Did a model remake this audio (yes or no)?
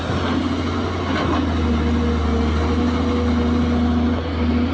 no